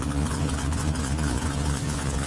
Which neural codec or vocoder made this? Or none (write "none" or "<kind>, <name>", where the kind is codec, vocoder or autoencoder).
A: vocoder, Vocos